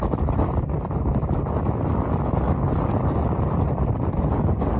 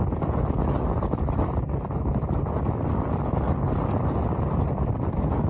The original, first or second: second